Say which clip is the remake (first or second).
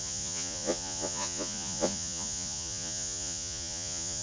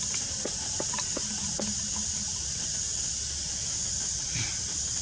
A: first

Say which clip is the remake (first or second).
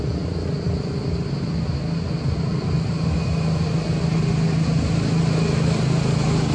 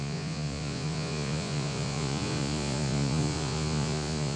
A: second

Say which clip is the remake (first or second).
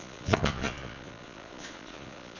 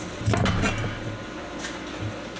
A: first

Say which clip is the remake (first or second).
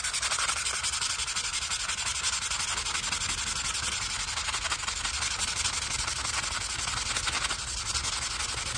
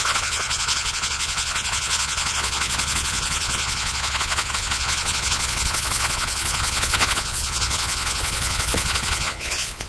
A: second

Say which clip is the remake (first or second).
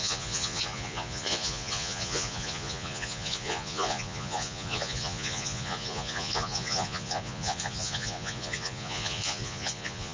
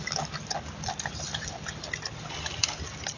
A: first